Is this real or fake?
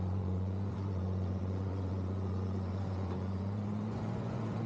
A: fake